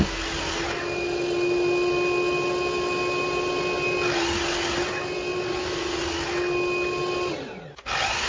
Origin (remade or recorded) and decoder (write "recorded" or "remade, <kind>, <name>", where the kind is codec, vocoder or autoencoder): recorded